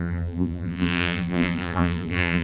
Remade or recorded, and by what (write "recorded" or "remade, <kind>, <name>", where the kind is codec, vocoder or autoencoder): remade, vocoder, BigVGAN v2